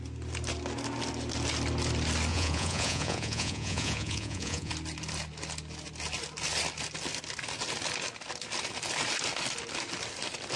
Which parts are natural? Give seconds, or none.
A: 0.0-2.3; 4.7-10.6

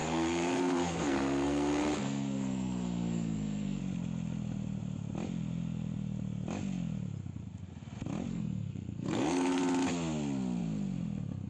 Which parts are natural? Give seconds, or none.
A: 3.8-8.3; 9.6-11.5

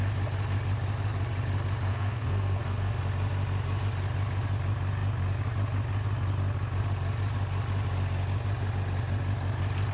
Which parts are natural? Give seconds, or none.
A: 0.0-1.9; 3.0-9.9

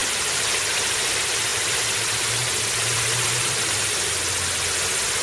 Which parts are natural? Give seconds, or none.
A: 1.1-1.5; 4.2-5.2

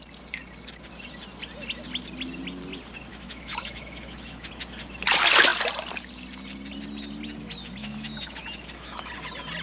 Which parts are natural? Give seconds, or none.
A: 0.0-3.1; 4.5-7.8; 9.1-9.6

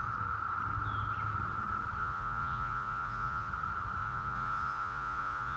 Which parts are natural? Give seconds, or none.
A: 0.0-2.0; 3.5-4.0

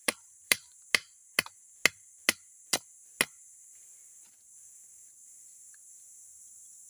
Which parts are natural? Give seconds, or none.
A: 0.9-6.9

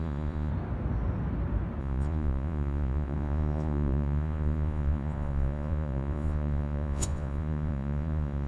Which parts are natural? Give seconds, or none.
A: 0.5-1.8